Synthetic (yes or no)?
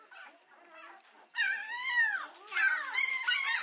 no